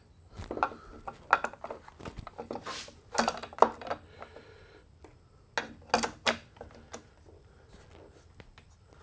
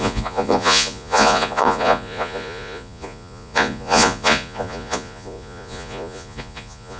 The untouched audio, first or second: first